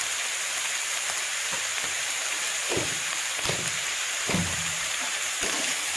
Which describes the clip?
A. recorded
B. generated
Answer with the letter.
B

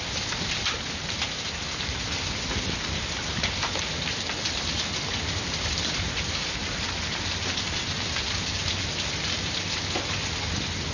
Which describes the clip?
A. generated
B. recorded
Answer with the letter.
B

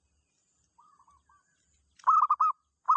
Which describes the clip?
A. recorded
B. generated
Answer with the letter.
A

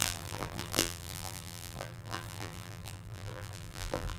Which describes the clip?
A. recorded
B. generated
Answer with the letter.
B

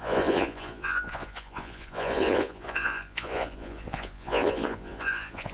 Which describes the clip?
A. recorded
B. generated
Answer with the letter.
B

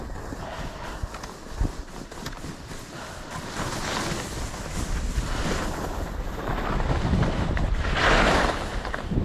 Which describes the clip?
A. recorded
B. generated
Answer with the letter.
A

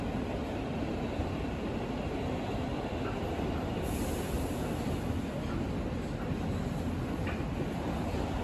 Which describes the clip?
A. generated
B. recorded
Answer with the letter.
B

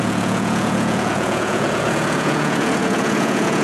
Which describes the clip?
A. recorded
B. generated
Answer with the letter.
B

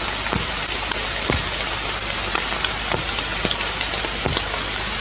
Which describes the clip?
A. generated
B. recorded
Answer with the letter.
B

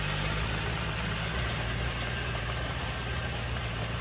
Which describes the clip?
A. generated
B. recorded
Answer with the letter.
A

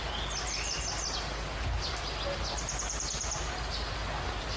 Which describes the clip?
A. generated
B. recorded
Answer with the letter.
B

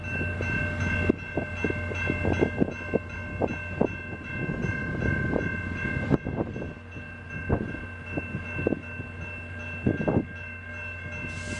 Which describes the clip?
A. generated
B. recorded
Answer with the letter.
B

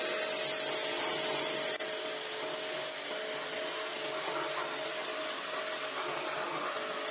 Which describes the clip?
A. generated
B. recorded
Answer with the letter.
B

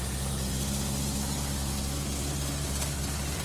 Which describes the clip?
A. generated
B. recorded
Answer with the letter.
B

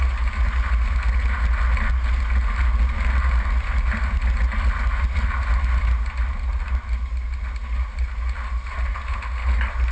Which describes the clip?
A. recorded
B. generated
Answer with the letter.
A